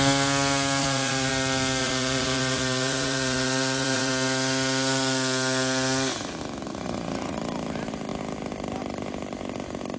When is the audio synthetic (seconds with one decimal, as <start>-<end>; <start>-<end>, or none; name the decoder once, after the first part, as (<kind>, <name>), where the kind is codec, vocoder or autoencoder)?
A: 0.8-1.3 (vocoder, Vocos); 1.8-4.1; 6.7-7.4